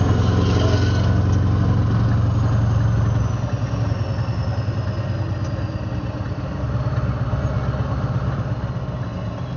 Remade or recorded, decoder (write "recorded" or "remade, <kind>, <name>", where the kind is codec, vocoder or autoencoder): recorded